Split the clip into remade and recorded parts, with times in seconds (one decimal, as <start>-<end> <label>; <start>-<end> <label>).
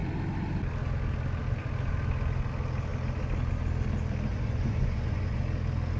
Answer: 0.0-4.3 recorded; 4.3-5.4 remade; 5.4-6.0 recorded